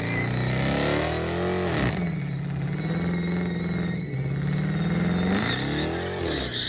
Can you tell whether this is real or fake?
real